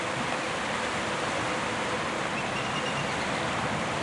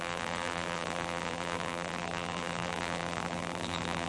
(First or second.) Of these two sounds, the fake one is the second